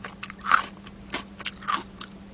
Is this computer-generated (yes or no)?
no